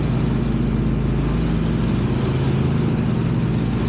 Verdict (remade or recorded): recorded